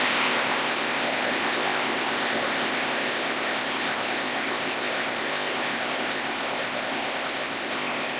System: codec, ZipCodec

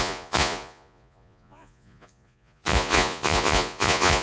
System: vocoder, Vocos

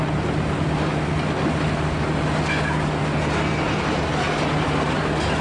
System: none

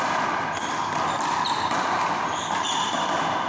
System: none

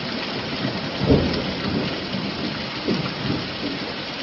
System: none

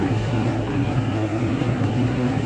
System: codec, SNAC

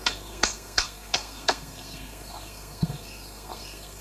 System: codec, SNAC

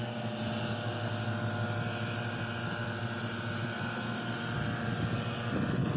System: none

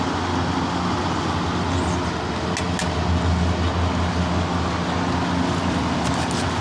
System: none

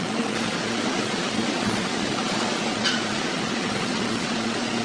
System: vocoder, Vocos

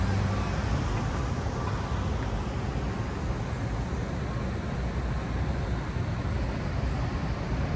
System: none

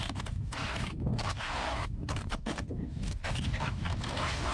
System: codec, DAC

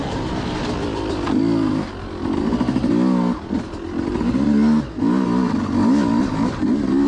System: none